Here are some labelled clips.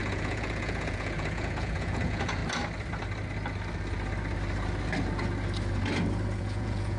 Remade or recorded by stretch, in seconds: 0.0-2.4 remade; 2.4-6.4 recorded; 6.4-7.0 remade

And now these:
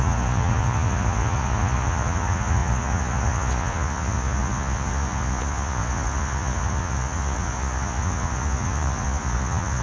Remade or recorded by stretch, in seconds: 0.0-9.8 remade

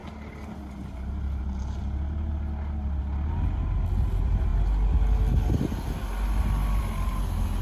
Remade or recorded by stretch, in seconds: 0.0-7.6 recorded

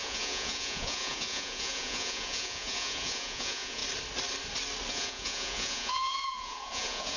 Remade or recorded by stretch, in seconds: 0.0-3.8 remade; 3.8-4.9 recorded; 4.9-7.2 remade